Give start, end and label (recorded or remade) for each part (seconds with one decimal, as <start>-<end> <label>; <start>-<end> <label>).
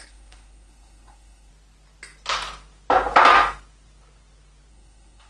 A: 0.0-1.5 remade; 1.5-4.7 recorded; 4.7-5.3 remade